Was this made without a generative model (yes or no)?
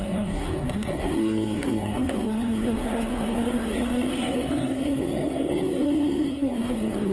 no